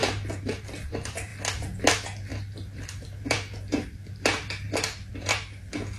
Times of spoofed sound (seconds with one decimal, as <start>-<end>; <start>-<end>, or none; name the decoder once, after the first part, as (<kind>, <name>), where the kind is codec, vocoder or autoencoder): 0.0-1.3 (vocoder, BigVGAN v2); 1.9-6.0